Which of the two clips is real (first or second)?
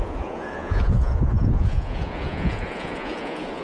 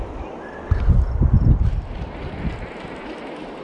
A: second